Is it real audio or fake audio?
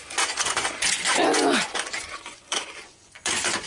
fake